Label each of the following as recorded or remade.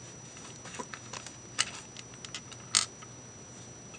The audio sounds recorded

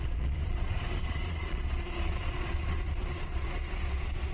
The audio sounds remade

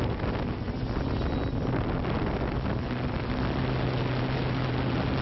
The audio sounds recorded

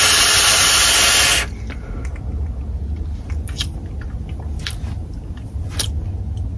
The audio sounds recorded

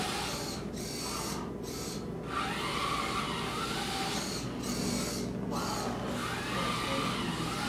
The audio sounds recorded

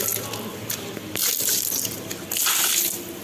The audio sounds recorded